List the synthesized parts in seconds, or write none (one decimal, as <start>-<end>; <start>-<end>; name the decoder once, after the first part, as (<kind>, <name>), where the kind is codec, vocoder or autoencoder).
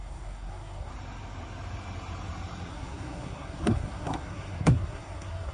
0.0-0.9 (codec, SNAC); 2.7-5.5